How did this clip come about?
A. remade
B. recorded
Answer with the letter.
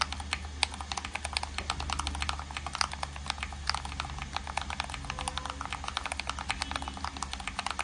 B